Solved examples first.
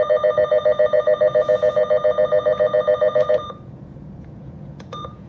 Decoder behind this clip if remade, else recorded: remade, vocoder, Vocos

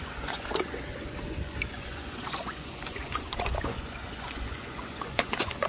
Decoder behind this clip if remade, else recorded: remade, vocoder, Vocos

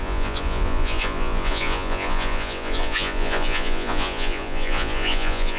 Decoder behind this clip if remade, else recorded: remade, vocoder, Vocos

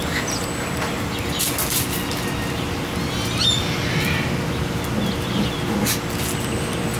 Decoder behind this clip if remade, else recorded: recorded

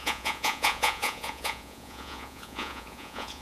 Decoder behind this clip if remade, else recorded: remade, vocoder, Vocos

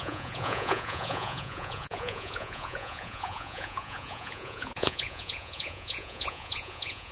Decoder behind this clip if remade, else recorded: remade, vocoder, Vocos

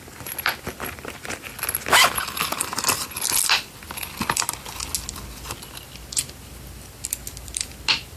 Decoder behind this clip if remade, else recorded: recorded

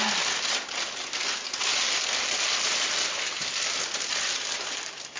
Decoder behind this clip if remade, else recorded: recorded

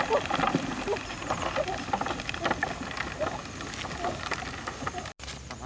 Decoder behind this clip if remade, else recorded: recorded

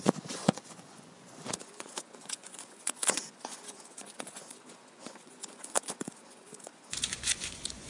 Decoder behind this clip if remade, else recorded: remade, vocoder, Vocos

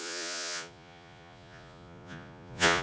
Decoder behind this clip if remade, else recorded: remade, vocoder, Vocos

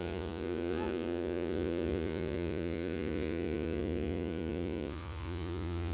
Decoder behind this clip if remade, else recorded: remade, vocoder, Vocos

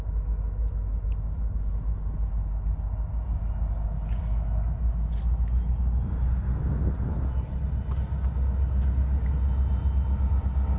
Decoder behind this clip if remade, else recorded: recorded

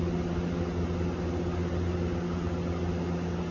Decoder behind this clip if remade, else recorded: recorded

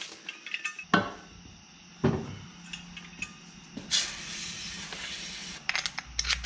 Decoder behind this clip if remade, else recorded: recorded